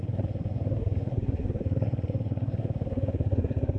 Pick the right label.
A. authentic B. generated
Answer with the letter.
B